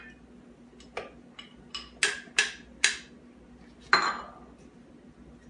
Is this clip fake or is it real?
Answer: real